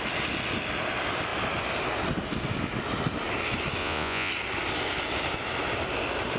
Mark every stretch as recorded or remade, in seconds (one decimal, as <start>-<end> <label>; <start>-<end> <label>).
0.0-3.8 recorded; 3.8-4.3 remade; 4.3-6.4 recorded